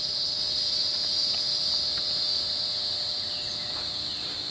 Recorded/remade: remade